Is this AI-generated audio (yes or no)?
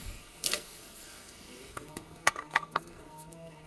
yes